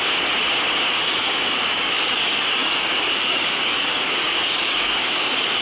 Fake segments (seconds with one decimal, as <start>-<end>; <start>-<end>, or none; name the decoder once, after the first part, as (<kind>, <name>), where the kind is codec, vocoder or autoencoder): 0.9-5.6 (codec, DAC)